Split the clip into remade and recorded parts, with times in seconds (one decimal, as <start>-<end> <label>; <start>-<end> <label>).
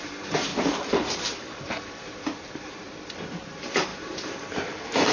0.0-0.5 remade; 0.5-2.6 recorded; 2.6-5.1 remade